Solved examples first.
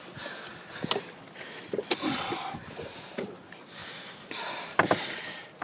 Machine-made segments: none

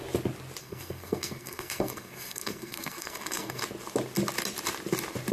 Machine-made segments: 0.6-3.6 (codec, SNAC)

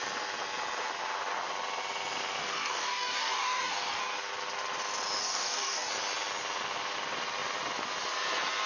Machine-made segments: 2.4-4.0 (codec, DAC); 5.2-5.9

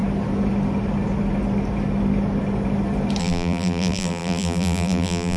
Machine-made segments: 3.2-5.4 (vocoder, BigVGAN v2)

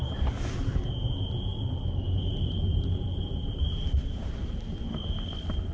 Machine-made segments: 0.0-0.8 (vocoder, BigVGAN v2); 1.5-4.9

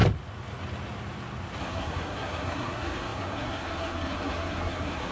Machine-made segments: 1.6-5.1 (codec, SNAC)

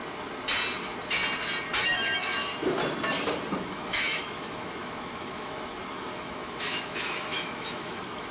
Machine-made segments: 1.8-2.5 (autoencoder, DAC-VAE); 3.5-8.3